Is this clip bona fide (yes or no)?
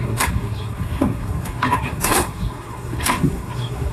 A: no